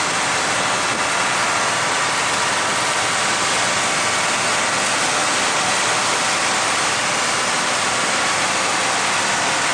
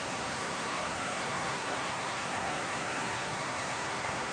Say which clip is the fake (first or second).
second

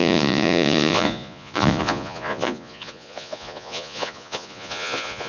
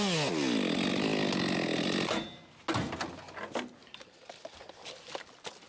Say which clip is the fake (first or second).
first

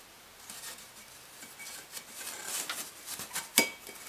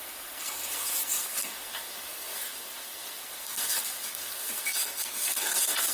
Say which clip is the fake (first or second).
second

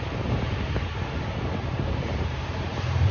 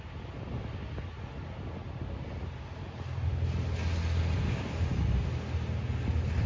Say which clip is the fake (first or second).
first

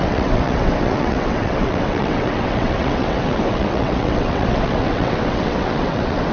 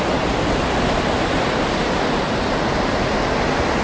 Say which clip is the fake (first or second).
first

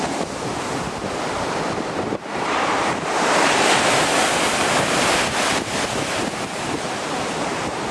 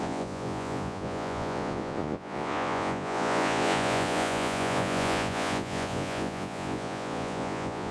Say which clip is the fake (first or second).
second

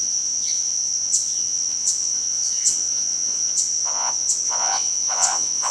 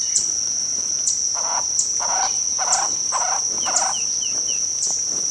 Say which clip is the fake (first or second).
first